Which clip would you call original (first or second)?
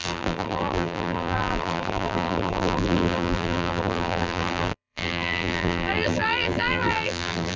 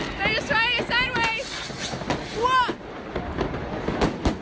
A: second